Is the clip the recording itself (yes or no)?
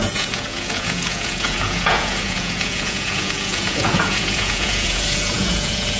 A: no